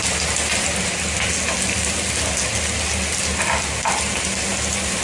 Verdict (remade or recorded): recorded